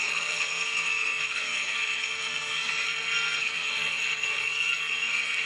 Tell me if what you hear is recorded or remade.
remade